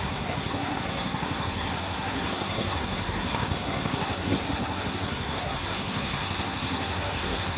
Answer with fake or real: fake